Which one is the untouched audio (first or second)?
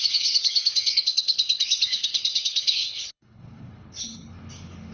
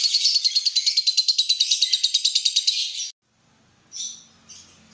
second